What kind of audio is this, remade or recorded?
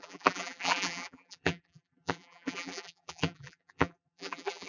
remade